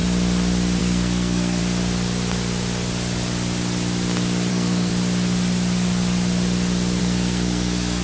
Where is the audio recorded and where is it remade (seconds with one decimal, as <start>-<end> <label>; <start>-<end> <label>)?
0.0-0.8 recorded; 0.8-1.6 remade; 1.6-4.5 recorded; 4.5-4.9 remade; 4.9-7.0 recorded; 7.0-8.0 remade